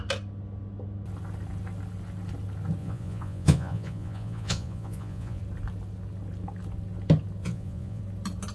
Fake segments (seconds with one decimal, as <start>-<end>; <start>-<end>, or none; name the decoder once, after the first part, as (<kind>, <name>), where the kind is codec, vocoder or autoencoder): 2.8-5.4 (vocoder, Vocos); 7.4-8.0

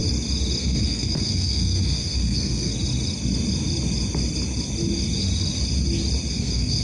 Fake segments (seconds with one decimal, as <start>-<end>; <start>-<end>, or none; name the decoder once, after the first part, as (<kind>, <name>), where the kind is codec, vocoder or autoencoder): 0.6-2.7 (codec, SNAC); 6.3-6.8

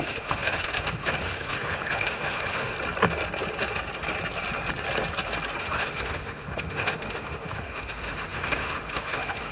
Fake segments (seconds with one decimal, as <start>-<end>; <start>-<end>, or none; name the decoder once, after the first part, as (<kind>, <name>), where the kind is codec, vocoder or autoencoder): 0.0-2.7 (autoencoder, DAC-VAE); 5.6-9.5

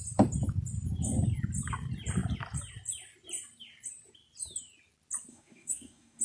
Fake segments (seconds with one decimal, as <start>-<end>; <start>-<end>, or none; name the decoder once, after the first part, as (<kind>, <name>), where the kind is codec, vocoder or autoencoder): 5.3-6.2 (codec, DAC)

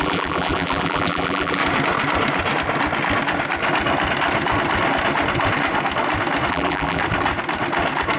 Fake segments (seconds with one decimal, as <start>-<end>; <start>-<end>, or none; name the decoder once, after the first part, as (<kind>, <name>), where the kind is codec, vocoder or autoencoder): 0.0-1.6 (vocoder, BigVGAN v2); 6.5-7.0